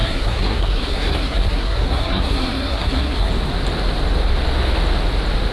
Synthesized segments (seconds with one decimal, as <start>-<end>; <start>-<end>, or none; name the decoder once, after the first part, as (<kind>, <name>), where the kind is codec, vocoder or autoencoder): 0.0-3.3 (codec, SNAC)